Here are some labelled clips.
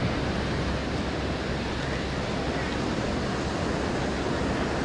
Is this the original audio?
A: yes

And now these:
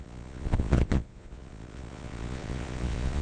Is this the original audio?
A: no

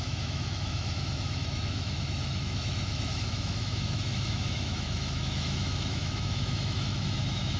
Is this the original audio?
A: no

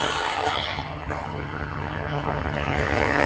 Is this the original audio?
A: no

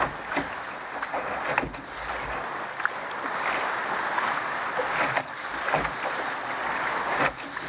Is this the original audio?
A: yes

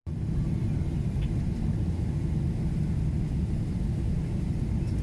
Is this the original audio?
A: yes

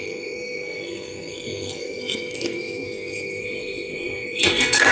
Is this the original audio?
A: no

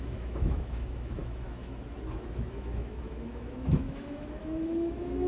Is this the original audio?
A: no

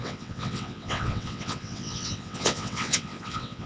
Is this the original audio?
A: no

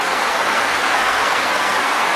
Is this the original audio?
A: no